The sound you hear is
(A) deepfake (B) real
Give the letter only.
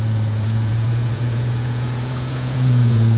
A